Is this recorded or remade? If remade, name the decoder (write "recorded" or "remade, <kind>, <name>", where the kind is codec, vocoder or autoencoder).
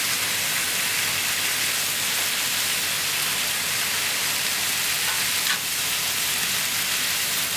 recorded